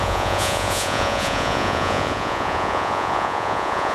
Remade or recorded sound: remade